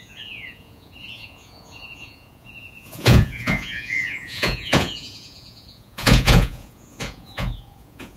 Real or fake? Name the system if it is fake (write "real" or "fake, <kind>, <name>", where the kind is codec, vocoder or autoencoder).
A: fake, vocoder, Vocos